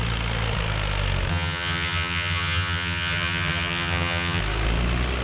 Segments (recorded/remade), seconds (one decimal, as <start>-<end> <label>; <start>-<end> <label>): 0.0-1.3 recorded; 1.3-4.4 remade; 4.4-5.2 recorded